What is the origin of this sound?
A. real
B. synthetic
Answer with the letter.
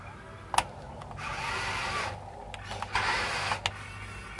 A